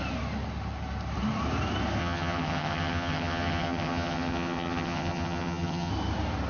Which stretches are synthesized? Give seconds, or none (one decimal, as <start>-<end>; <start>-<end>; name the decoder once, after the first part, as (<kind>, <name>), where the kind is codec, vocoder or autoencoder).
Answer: 2.0-5.9 (vocoder, HiFi-GAN)